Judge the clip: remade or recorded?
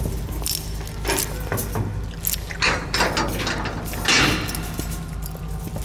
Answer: recorded